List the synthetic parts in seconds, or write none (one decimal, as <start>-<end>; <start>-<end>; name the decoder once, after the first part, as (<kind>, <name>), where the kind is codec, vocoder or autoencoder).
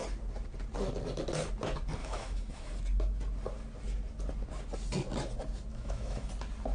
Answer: 2.0-2.7 (autoencoder, DAC-VAE); 5.7-6.3